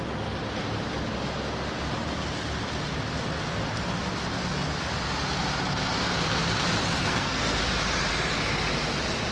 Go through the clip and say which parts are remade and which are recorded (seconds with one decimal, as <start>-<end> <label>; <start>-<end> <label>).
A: 0.0-7.0 recorded; 7.0-7.6 remade; 7.6-9.3 recorded